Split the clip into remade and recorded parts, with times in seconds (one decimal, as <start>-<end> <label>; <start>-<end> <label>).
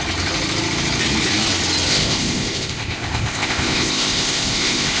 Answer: 0.0-1.9 recorded; 1.9-5.0 remade